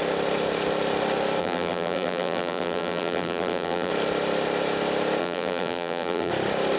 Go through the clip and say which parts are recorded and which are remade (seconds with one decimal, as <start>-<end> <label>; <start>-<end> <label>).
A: 0.0-1.4 recorded; 1.4-3.9 remade; 3.9-5.2 recorded; 5.2-6.3 remade; 6.3-6.8 recorded